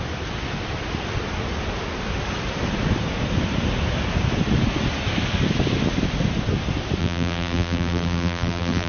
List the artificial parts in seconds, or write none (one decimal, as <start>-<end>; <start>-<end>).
7.0-8.9